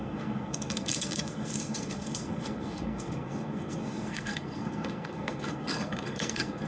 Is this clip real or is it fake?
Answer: fake